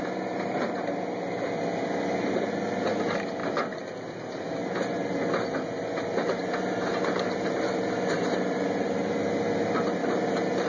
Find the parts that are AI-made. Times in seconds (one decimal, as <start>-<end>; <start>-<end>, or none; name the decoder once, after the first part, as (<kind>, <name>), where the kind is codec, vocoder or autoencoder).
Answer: none